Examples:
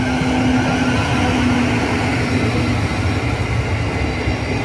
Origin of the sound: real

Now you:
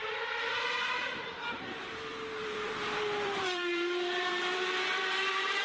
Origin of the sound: fake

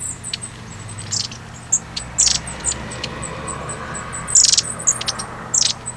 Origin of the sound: real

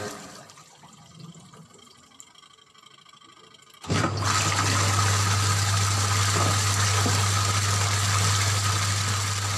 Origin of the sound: fake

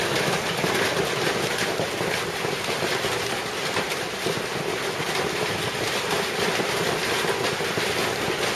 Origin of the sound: real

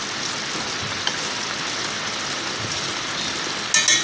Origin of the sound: real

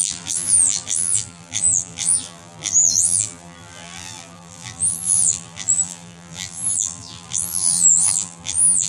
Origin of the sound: fake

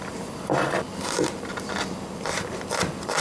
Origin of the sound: fake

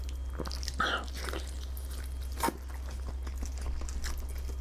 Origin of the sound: real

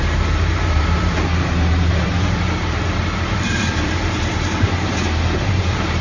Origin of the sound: fake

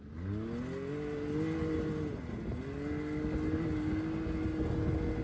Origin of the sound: real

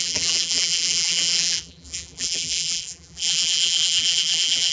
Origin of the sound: fake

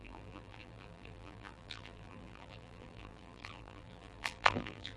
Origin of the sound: fake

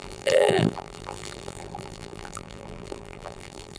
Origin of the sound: fake